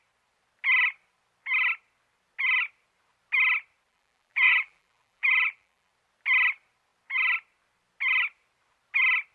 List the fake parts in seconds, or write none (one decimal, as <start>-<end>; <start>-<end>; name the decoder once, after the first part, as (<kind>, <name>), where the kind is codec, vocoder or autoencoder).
3.9-5.9 (vocoder, BigVGAN v2)